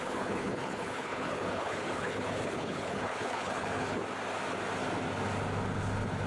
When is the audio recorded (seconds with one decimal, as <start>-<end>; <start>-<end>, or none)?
4.0-6.3

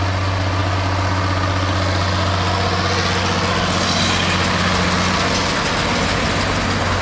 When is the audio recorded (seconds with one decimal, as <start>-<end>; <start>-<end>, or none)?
0.0-7.0

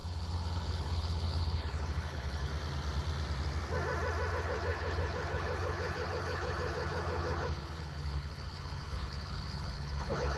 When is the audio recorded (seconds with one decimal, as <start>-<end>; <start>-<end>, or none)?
2.5-4.3

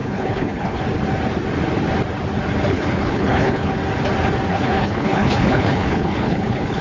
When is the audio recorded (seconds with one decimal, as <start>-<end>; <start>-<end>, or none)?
0.8-2.7; 3.7-4.5

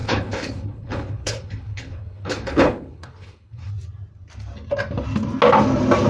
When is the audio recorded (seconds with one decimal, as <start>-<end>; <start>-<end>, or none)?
3.7-6.1

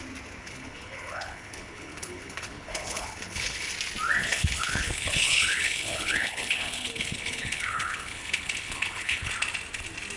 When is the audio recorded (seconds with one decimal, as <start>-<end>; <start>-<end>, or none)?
0.0-0.4; 3.7-4.2; 9.3-10.2

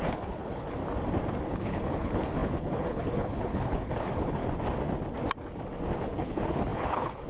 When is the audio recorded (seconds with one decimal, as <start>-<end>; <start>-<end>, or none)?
0.8-1.5; 4.4-6.0

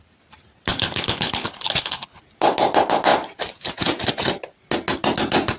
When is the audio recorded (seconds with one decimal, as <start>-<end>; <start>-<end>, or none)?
0.0-0.7; 2.2-5.6